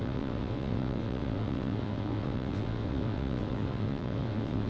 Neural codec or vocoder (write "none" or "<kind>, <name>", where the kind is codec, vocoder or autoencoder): vocoder, WaveNeXt